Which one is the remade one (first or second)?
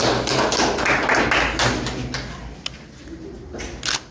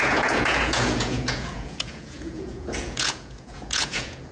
second